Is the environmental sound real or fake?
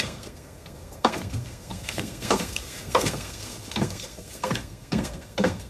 fake